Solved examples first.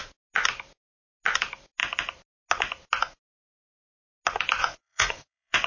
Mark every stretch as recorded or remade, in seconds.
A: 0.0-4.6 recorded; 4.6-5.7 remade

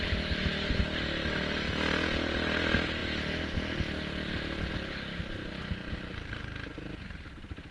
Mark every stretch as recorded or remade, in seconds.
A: 0.0-7.7 recorded

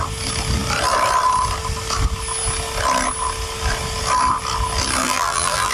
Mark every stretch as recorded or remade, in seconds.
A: 0.0-5.0 recorded; 5.0-5.7 remade

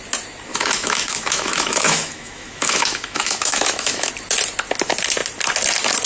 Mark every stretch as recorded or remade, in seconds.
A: 0.0-0.5 recorded; 0.5-4.1 remade; 4.1-6.0 recorded

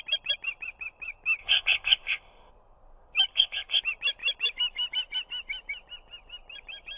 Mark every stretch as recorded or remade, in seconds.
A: 0.0-1.4 recorded; 1.4-2.5 remade; 2.5-3.3 recorded; 3.3-3.8 remade; 3.8-7.0 recorded